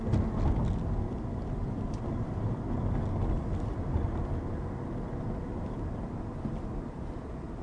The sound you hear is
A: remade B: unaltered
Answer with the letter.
B